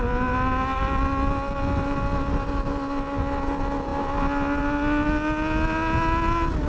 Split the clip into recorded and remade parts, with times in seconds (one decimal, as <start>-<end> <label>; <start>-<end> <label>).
0.0-6.7 recorded